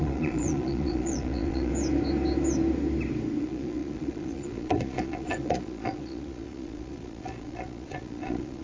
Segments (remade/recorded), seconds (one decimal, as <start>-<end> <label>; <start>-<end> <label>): 0.0-1.7 remade; 1.7-3.4 recorded; 3.4-8.6 remade